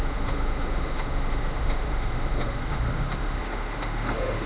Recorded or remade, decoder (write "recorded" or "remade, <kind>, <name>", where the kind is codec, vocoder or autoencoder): remade, autoencoder, DAC-VAE